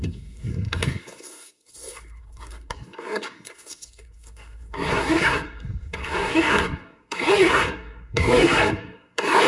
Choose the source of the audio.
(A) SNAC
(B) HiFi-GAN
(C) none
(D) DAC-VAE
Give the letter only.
A